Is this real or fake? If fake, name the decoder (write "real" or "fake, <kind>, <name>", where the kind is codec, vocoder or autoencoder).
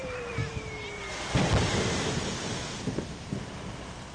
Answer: fake, vocoder, BigVGAN v2